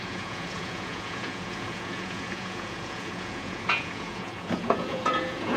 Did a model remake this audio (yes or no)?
yes